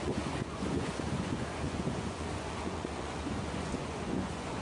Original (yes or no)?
no